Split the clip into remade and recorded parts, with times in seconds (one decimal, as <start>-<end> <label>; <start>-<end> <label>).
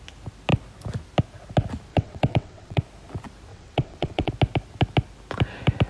0.0-1.9 recorded; 1.9-2.8 remade; 2.8-3.5 recorded; 3.5-4.3 remade; 4.3-5.9 recorded